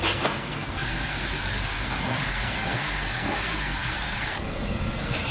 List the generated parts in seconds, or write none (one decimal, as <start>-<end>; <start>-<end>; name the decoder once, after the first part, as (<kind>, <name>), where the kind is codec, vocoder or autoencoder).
0.0-5.3 (codec, SNAC)